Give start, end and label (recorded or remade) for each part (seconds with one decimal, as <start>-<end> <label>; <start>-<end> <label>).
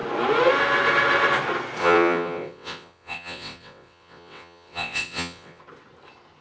0.0-1.8 recorded; 1.8-5.6 remade; 5.6-6.4 recorded